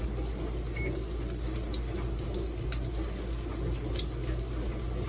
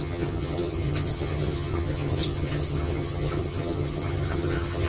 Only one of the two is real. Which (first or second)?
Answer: first